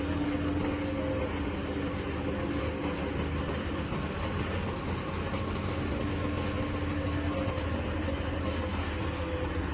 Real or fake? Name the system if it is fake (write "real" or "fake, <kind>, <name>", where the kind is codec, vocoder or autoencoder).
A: real